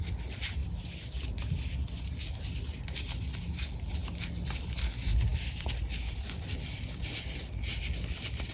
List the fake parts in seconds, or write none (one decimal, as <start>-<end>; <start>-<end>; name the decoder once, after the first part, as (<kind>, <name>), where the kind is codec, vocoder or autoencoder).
none